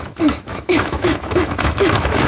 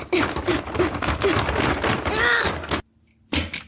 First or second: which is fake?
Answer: first